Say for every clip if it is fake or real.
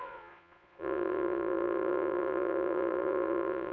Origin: fake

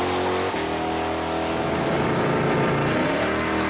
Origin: real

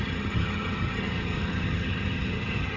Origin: fake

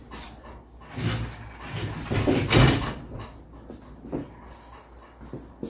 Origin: real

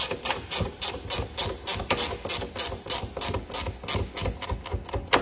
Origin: real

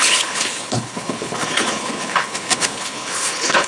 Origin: fake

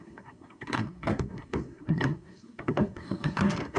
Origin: fake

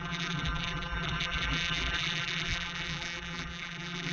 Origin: fake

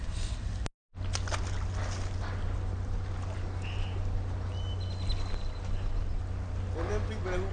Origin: real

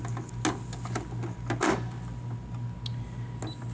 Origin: real